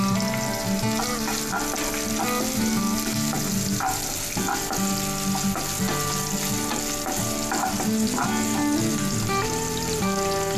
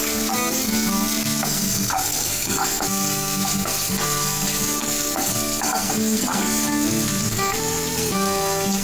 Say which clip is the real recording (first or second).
first